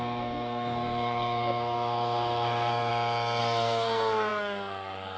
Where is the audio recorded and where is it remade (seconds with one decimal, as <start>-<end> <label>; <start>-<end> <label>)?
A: 0.0-2.9 remade; 2.9-3.4 recorded; 3.4-5.2 remade